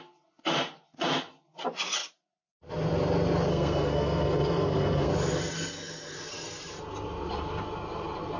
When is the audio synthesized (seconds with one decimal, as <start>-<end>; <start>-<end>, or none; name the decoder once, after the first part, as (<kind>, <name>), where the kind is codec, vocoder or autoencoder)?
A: 3.5-5.1 (codec, SNAC)